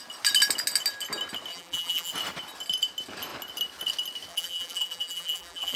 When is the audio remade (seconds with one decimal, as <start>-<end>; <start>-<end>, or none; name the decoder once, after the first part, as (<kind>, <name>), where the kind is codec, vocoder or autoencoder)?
1.5-2.1 (vocoder, BigVGAN v2); 4.3-5.8